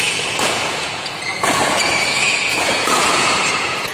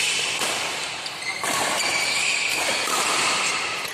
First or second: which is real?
second